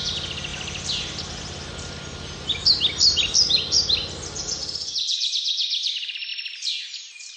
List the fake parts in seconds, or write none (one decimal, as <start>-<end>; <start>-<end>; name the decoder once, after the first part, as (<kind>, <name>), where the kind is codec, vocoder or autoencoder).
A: 4.6-5.3 (vocoder, BigVGAN v2); 6.3-6.9